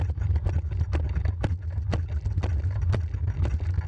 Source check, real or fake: real